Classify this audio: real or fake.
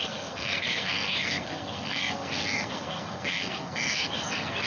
fake